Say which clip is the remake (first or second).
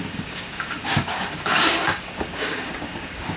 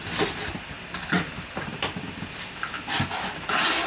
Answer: first